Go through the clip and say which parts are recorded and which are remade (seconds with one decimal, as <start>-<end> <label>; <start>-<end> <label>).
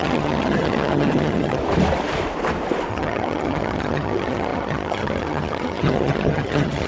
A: 0.0-1.6 remade; 1.6-2.9 recorded; 2.9-6.9 remade